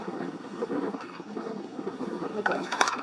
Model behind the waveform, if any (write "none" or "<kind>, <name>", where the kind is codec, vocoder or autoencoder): codec, SNAC